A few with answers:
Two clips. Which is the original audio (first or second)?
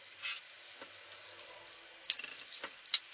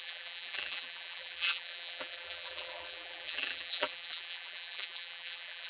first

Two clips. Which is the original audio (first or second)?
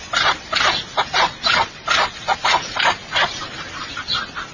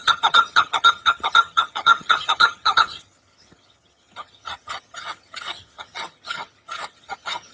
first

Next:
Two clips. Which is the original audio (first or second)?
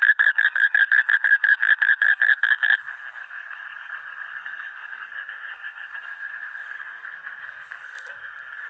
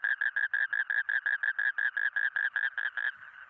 second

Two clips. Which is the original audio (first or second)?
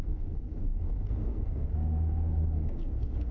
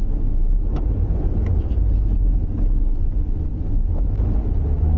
second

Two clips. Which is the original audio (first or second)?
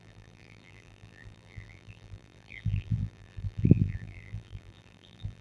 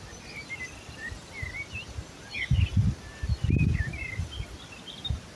second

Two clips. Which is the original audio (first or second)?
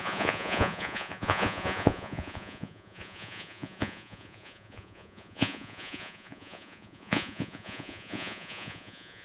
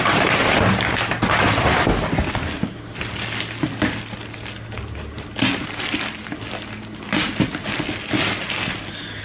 second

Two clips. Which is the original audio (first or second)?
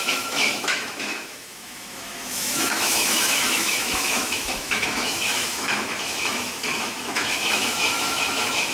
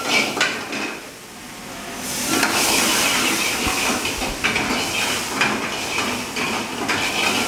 second